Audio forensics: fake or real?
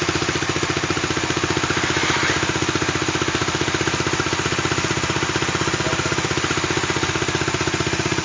real